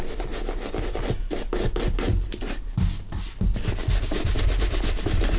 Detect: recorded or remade recorded